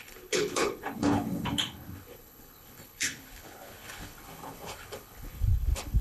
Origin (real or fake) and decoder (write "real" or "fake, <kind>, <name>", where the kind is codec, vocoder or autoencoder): fake, codec, HILCodec